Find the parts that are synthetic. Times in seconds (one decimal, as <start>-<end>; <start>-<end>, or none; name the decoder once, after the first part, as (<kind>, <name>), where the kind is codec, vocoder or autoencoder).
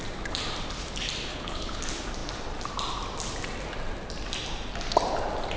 1.3-1.8 (codec, HILCodec)